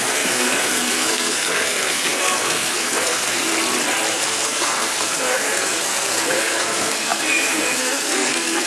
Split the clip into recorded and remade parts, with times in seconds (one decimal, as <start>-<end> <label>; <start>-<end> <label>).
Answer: 0.0-3.5 remade; 3.5-4.1 recorded; 4.1-8.7 remade